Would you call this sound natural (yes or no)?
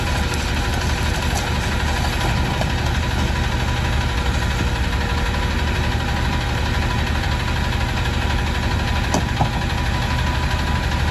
yes